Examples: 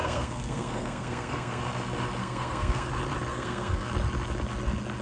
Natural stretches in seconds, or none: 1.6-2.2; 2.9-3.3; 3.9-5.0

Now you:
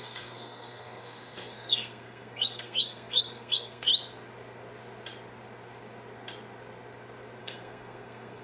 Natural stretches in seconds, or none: 3.9-7.4

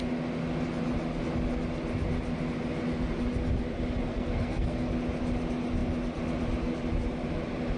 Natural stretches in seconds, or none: 0.0-4.1; 4.9-7.8

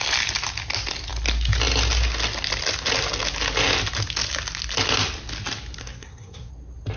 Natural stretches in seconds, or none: 0.0-5.8; 6.5-7.0

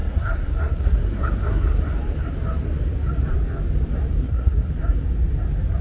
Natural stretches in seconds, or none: 1.8-4.2; 4.7-5.8

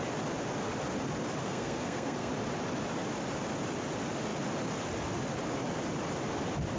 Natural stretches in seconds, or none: 0.0-1.4; 2.3-6.8

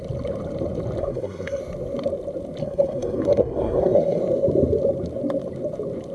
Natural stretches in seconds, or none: 0.0-1.0; 1.6-2.6; 4.2-6.1